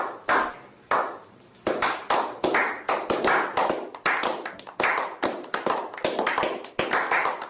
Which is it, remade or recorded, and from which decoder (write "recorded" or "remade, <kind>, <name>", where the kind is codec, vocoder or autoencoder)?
recorded